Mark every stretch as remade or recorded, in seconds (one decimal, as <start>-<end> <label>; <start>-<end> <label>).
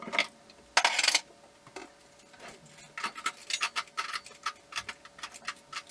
0.0-5.9 recorded